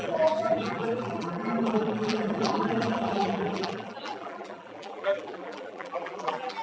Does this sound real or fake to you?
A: fake